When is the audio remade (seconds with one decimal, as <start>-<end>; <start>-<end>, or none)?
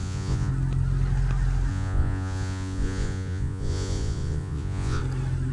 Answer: 0.0-0.5; 1.7-5.0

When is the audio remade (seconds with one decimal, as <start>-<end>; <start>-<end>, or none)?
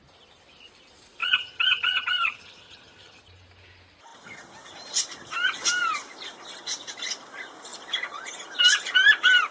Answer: 1.2-3.2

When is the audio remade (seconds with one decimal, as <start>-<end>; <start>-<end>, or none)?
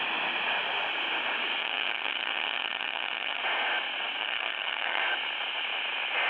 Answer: 1.6-3.4; 4.2-5.0